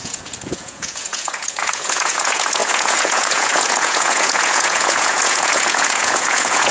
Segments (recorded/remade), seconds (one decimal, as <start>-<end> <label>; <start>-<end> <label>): 0.0-6.7 remade